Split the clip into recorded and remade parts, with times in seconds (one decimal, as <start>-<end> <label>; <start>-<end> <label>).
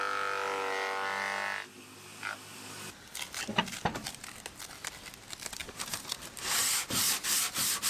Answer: 0.0-5.6 recorded; 5.6-7.0 remade; 7.0-7.9 recorded